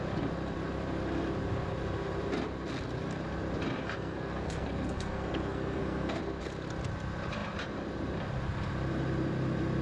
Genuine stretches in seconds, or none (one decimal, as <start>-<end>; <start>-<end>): 0.0-3.8; 6.2-9.8